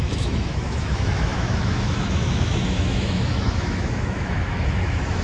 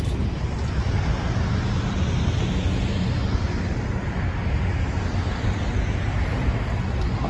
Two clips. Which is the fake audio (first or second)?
first